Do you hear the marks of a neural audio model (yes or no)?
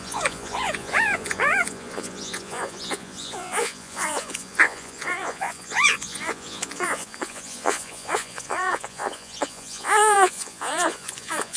yes